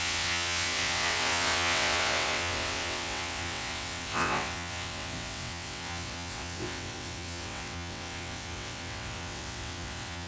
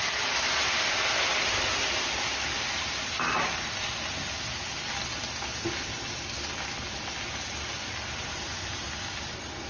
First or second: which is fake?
first